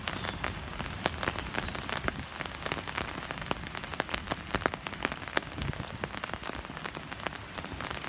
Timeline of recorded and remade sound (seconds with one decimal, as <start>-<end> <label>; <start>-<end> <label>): 0.0-8.1 recorded